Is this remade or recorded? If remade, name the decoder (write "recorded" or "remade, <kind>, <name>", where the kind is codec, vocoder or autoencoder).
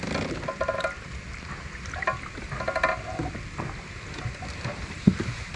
recorded